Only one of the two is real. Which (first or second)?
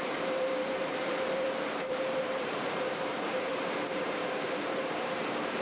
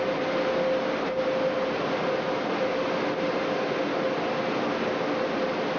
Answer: second